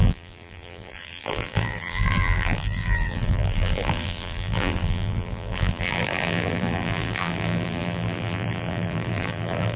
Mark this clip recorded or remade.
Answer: remade